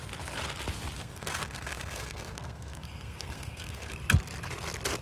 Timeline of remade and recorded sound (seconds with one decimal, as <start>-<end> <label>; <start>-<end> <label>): 0.0-1.0 recorded; 1.0-4.0 remade; 4.0-5.0 recorded

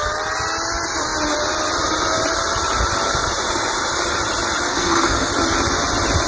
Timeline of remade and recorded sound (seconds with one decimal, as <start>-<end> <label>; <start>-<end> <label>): 0.0-4.7 recorded; 4.7-5.3 remade; 5.3-6.3 recorded

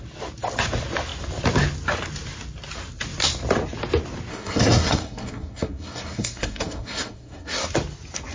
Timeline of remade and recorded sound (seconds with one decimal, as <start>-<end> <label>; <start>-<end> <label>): 0.0-4.3 recorded; 4.3-7.7 remade; 7.7-8.3 recorded

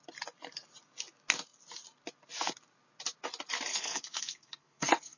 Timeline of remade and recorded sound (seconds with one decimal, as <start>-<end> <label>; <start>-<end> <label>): 0.0-3.7 recorded; 3.7-5.2 remade